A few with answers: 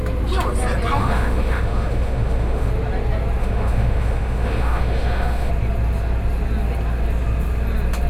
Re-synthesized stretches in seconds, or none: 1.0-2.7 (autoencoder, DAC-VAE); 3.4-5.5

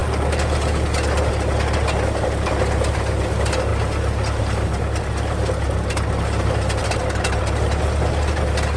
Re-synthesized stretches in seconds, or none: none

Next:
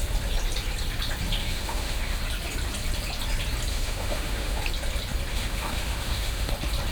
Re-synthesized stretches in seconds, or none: 1.4-2.2 (autoencoder, DAC-VAE); 3.7-4.6; 5.3-6.5

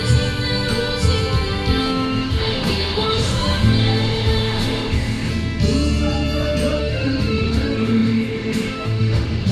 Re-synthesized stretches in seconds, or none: 1.8-5.3 (autoencoder, DAC-VAE); 6.8-9.5

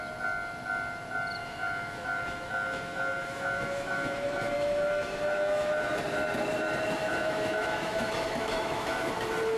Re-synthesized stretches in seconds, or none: 1.4-6.0 (autoencoder, DAC-VAE); 7.0-9.1

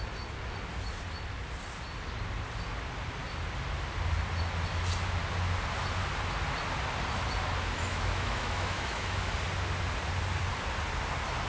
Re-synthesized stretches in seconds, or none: 7.8-9.3 (autoencoder, DAC-VAE)

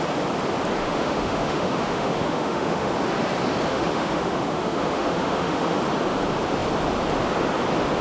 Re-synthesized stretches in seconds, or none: 0.8-2.9 (autoencoder, DAC-VAE); 3.7-5.8